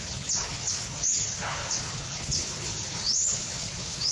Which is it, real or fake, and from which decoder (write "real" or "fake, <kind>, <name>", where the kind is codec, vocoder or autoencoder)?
fake, codec, HILCodec